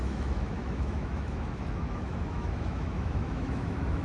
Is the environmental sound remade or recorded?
remade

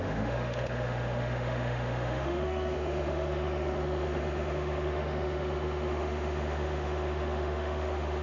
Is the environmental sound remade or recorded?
remade